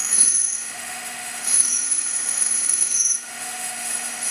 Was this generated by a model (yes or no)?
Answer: yes